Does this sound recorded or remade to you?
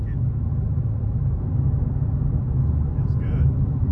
recorded